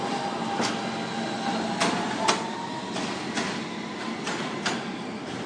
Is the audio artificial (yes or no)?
no